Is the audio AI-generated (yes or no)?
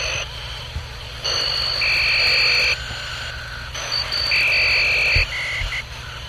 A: no